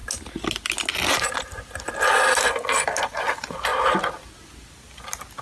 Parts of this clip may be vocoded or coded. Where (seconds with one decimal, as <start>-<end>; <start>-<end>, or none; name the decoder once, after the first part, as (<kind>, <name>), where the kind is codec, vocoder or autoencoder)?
none